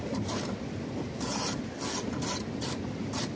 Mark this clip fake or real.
real